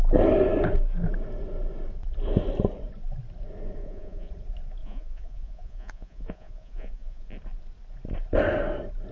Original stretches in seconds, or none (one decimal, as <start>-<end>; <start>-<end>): 0.0-3.8; 4.3-4.8; 7.3-9.1